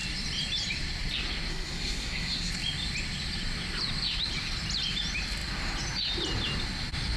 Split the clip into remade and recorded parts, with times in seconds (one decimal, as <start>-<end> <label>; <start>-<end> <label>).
0.0-1.5 recorded; 1.5-2.5 remade; 2.5-7.2 recorded